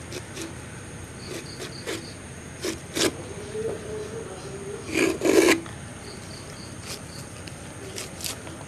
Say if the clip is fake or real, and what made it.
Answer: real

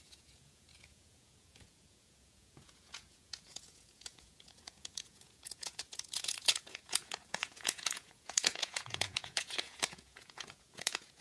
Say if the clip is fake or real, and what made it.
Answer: fake, vocoder, Vocos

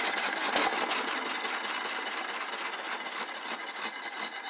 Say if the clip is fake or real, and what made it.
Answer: real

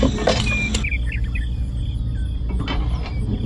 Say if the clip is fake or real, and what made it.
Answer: real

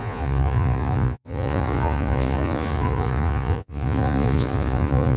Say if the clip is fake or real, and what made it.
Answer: fake, vocoder, Vocos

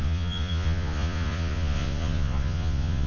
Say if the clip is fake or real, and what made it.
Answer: fake, vocoder, Vocos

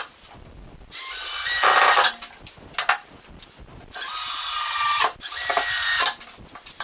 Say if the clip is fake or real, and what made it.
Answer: real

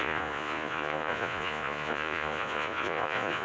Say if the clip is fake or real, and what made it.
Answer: fake, vocoder, Vocos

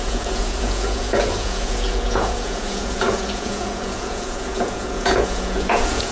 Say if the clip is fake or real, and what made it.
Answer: fake, vocoder, Vocos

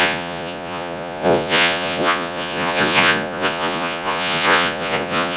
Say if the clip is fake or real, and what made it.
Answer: fake, vocoder, Vocos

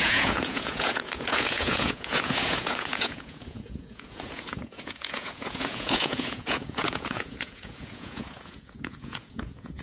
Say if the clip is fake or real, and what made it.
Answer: fake, vocoder, Vocos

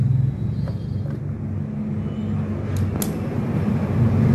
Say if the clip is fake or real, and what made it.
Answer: real